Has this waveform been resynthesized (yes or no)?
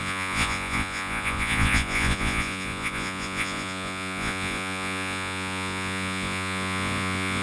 yes